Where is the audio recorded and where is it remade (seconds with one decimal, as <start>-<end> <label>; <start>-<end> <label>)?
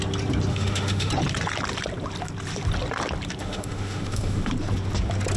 0.0-0.5 recorded; 0.5-1.1 remade; 1.1-3.4 recorded; 3.4-4.5 remade; 4.5-5.4 recorded